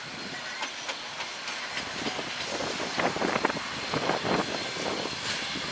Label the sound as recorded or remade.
recorded